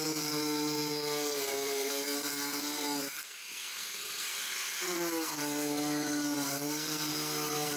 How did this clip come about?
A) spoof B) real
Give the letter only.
A